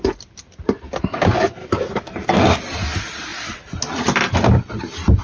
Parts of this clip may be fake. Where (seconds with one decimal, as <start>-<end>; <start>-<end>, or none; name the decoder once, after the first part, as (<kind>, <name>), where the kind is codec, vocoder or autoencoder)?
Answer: 1.6-2.6 (codec, DAC)